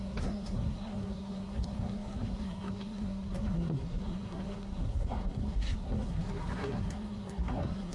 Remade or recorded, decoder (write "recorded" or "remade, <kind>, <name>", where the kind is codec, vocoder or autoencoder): remade, codec, SNAC